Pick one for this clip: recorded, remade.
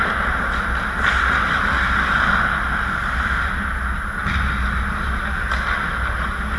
recorded